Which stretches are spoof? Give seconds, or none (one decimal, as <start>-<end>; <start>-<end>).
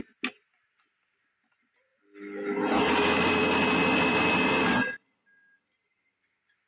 none